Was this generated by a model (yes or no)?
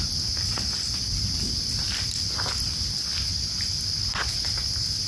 no